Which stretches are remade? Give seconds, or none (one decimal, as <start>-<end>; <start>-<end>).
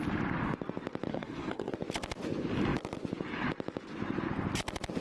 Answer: 1.1-1.7